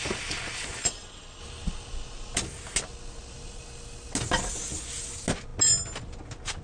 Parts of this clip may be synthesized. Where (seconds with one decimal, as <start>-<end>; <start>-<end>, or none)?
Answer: 0.8-1.4